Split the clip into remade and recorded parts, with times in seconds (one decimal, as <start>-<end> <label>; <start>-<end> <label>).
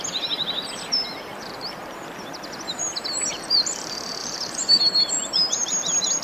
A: 0.0-4.2 recorded; 4.2-4.8 remade; 4.8-6.2 recorded